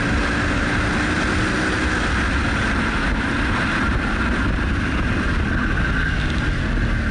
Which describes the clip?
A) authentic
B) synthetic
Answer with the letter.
A